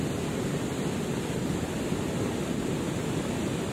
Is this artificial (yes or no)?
no